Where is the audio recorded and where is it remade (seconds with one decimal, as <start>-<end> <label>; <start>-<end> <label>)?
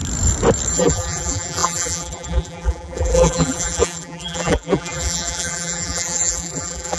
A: 0.0-0.7 recorded; 0.7-7.0 remade